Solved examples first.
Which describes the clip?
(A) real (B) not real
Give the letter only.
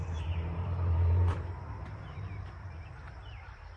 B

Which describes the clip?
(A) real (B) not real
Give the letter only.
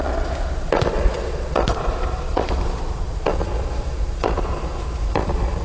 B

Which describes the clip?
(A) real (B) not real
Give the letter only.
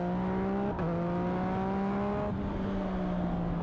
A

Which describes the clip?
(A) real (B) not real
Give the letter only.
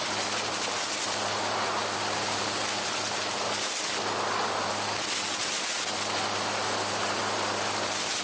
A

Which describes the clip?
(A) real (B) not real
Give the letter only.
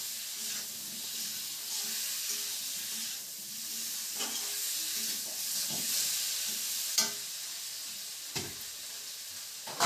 A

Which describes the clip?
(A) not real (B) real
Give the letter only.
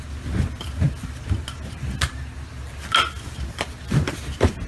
B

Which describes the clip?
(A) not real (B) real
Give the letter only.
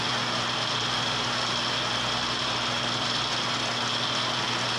B